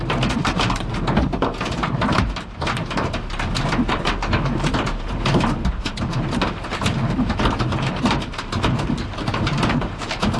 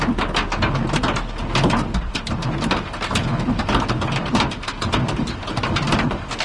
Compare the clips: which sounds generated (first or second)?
first